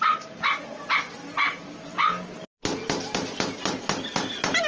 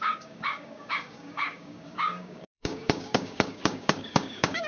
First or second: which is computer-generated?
second